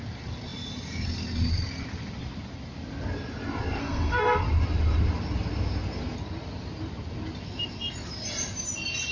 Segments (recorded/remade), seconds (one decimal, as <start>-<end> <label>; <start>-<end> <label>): 0.0-3.8 recorded; 3.8-4.4 remade; 4.4-9.1 recorded